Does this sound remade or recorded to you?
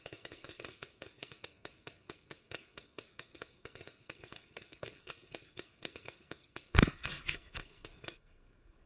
remade